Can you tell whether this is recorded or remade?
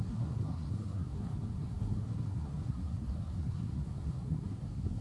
remade